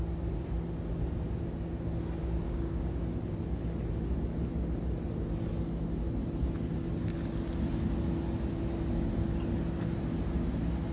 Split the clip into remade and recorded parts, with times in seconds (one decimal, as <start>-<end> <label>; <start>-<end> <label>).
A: 0.0-2.2 recorded; 2.2-3.0 remade; 3.0-10.9 recorded